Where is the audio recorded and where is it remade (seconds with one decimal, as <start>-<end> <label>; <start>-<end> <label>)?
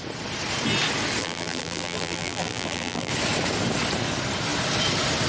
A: 0.0-1.2 recorded; 1.2-3.1 remade; 3.1-5.3 recorded